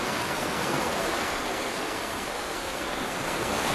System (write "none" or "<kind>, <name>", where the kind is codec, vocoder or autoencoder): codec, SNAC